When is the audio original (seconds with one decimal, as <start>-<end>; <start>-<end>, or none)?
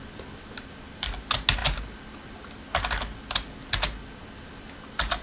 0.0-5.2